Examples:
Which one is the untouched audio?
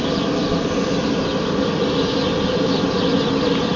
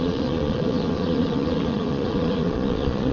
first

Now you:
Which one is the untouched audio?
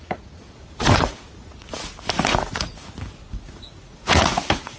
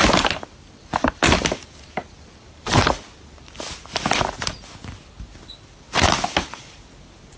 second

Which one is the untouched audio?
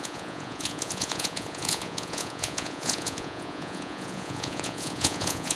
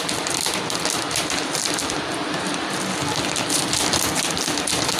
second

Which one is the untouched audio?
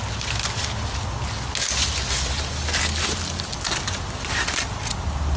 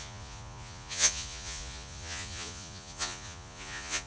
first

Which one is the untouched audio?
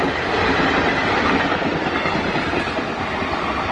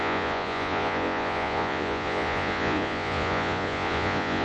first